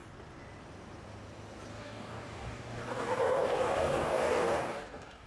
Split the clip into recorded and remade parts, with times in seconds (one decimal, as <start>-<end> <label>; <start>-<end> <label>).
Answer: 0.0-1.7 recorded; 1.7-5.3 remade